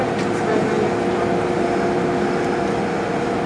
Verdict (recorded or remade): recorded